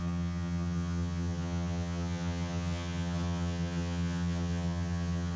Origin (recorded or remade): remade